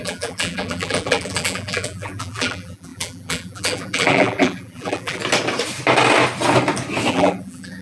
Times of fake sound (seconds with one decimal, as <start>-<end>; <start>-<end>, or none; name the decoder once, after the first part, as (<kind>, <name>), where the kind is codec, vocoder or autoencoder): 0.0-5.2 (vocoder, BigVGAN v2); 7.1-7.8